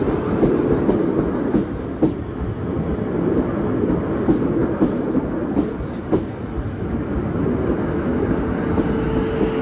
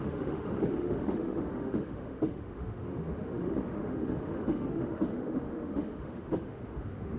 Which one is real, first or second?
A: first